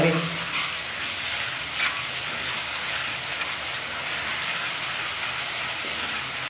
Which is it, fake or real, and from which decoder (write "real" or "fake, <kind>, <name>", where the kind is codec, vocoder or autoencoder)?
real